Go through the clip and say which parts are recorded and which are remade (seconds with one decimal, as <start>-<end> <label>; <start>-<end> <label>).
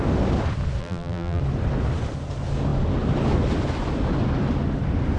0.0-0.8 recorded; 0.8-1.4 remade; 1.4-5.2 recorded